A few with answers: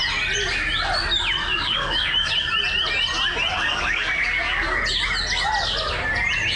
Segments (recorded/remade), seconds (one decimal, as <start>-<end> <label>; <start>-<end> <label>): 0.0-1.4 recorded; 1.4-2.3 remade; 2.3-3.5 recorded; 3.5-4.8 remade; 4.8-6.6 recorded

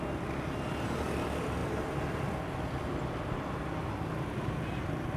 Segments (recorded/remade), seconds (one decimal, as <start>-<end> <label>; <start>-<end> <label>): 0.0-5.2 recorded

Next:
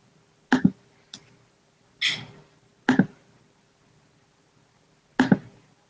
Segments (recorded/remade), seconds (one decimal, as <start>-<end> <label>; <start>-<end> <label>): 0.0-5.9 recorded

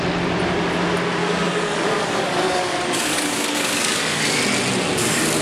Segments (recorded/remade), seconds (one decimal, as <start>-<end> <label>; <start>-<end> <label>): 0.0-1.2 recorded; 1.2-4.4 remade; 4.4-5.4 recorded

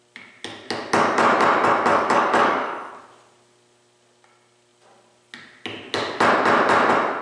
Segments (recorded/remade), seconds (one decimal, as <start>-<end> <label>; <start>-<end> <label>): 0.0-1.9 recorded; 1.9-2.9 remade; 2.9-7.2 recorded

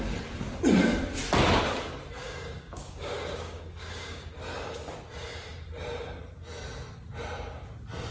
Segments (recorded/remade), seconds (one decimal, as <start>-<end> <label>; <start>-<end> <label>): 0.0-2.2 recorded; 2.2-4.3 remade; 4.3-8.1 recorded

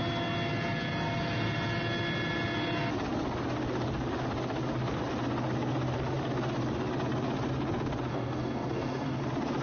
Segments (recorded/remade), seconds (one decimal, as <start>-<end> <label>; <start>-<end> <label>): 0.0-8.1 recorded; 8.1-9.2 remade; 9.2-9.6 recorded

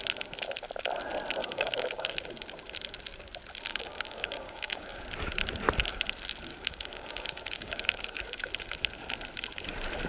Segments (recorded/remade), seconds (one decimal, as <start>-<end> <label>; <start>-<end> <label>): 0.0-1.4 recorded; 1.4-2.1 remade; 2.1-3.7 recorded; 3.7-5.0 remade; 5.0-6.5 recorded; 6.5-8.5 remade; 8.5-10.1 recorded